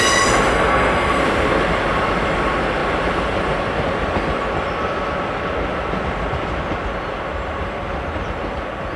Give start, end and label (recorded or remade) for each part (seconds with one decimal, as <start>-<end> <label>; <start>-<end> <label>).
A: 0.0-0.5 recorded; 0.5-1.2 remade; 1.2-9.0 recorded